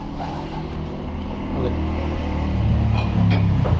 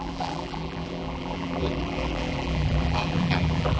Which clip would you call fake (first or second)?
second